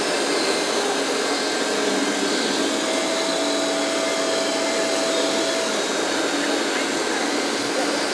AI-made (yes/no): no